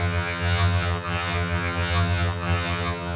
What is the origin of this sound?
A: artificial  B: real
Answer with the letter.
A